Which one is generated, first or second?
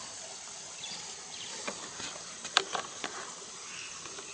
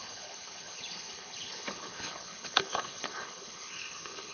second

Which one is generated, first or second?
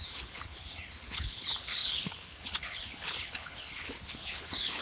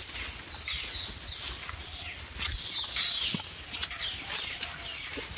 first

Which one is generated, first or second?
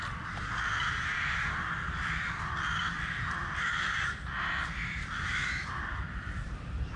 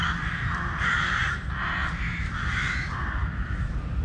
first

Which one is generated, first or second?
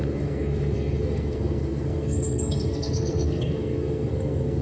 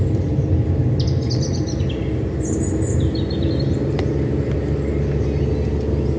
first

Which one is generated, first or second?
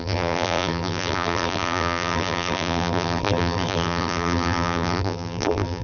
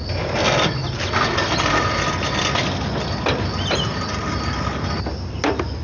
first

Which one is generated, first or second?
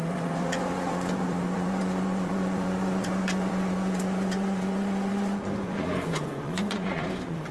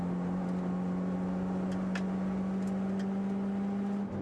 first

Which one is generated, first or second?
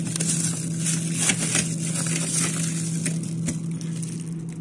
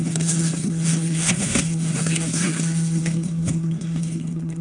second